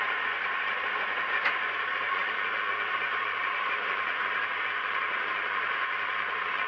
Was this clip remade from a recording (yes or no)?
yes